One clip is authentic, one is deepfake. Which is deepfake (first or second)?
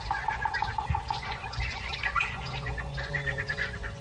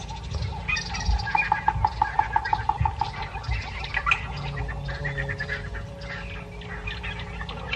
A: first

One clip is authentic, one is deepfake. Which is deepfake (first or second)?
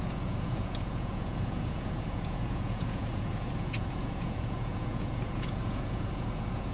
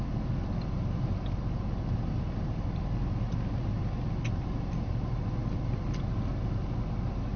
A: first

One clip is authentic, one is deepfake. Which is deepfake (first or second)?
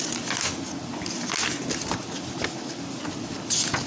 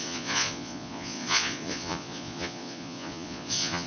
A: second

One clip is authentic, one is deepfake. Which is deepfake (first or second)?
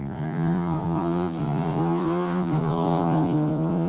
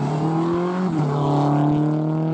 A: first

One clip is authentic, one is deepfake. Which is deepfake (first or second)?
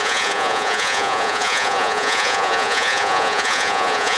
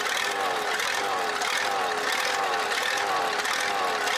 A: first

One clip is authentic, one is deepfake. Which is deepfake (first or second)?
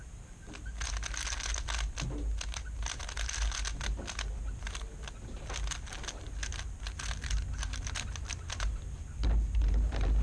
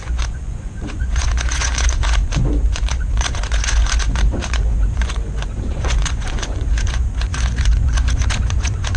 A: second